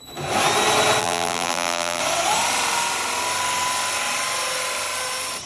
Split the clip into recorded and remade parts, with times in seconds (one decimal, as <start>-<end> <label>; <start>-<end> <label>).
0.0-1.0 recorded; 1.0-2.0 remade; 2.0-5.5 recorded